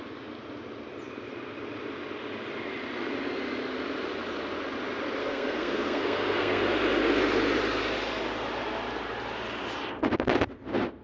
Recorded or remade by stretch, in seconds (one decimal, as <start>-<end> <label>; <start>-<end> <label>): 0.0-5.2 recorded; 5.2-6.6 remade; 6.6-11.0 recorded